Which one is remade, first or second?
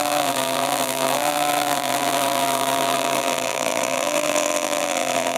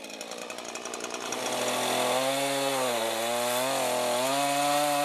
first